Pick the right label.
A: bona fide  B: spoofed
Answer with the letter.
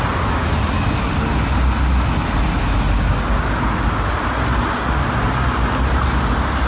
A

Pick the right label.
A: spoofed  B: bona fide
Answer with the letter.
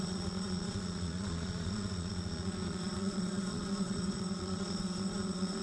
A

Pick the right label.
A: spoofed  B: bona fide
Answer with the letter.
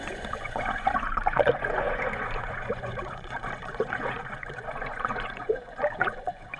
A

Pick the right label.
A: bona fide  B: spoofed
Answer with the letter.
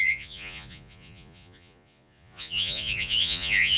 B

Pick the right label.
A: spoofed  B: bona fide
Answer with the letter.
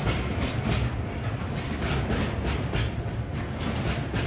B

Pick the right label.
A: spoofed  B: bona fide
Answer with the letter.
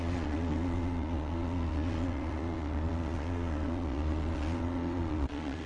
A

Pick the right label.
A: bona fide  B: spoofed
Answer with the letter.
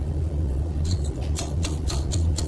B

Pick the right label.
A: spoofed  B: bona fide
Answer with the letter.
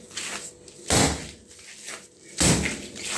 B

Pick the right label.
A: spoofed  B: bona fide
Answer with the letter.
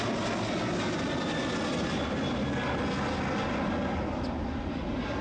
B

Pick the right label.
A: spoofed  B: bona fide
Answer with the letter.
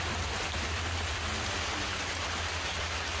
B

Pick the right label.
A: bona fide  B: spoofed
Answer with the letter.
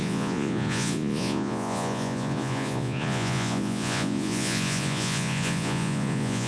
B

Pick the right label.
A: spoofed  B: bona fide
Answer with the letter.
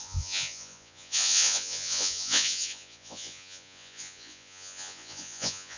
A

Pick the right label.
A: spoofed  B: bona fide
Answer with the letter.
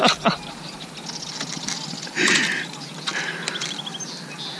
B